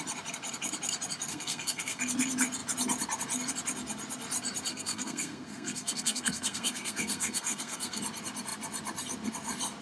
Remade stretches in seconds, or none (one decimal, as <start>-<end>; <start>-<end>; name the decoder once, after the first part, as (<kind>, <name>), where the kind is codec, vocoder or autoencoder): 1.3-2.0 (codec, SNAC); 4.7-8.0